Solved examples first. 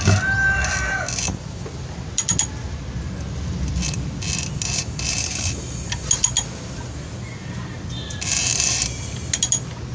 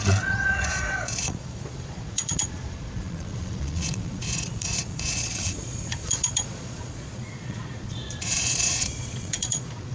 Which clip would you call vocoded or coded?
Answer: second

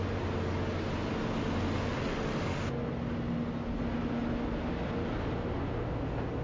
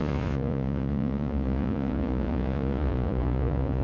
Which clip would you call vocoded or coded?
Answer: second